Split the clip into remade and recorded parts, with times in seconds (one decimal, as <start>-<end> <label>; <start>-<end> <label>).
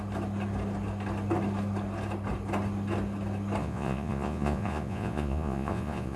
0.0-3.6 recorded; 3.6-6.2 remade